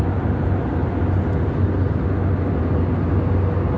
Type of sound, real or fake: real